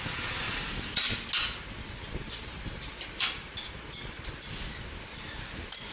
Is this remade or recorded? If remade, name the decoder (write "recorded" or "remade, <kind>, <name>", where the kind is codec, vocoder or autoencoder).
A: recorded